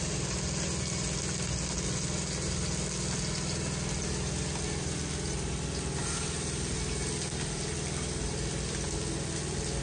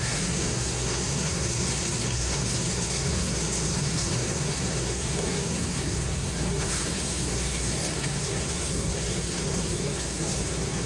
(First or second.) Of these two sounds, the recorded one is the first